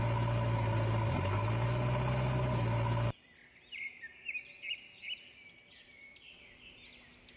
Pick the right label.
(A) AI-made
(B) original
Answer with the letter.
B